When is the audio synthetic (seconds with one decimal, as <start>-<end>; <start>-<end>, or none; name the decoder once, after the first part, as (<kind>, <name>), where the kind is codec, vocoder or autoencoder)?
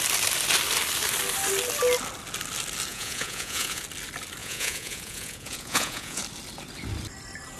2.9-3.8 (vocoder, Vocos); 4.4-6.2